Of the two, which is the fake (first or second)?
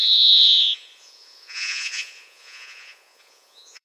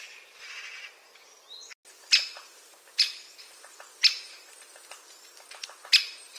first